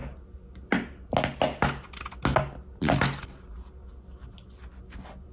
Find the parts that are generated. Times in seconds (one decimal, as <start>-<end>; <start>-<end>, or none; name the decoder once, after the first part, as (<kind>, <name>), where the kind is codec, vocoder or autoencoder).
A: none